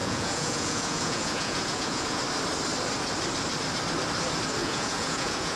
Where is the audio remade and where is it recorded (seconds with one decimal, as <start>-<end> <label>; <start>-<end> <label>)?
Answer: 0.0-2.2 remade; 2.2-4.6 recorded; 4.6-5.6 remade